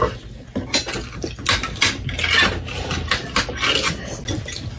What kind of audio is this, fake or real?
real